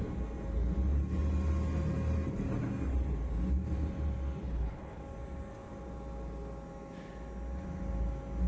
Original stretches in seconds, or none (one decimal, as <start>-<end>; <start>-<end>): 0.0-4.4; 5.0-8.5